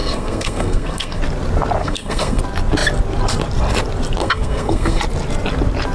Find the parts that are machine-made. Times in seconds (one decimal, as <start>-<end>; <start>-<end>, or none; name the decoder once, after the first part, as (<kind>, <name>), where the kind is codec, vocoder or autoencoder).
0.0-1.2 (codec, SNAC); 1.8-2.4; 4.2-5.0